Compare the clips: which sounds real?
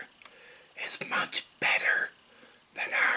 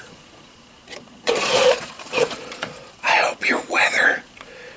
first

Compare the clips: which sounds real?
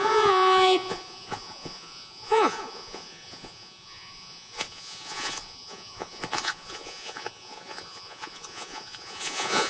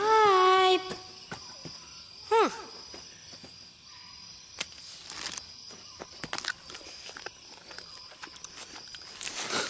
second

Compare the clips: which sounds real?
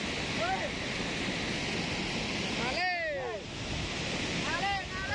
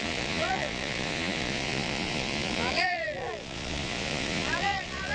first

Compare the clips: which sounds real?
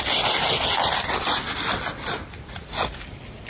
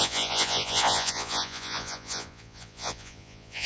first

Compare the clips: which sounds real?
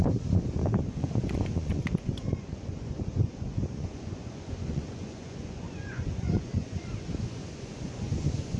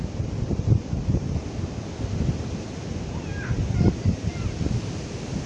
second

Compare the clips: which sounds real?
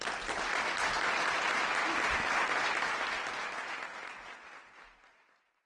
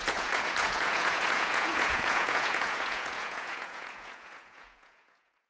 first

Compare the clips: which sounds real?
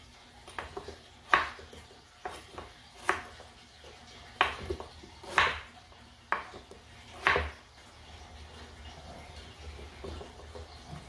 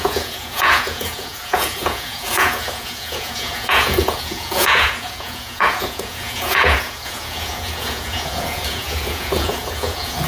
first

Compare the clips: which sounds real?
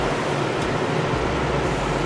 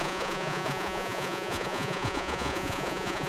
first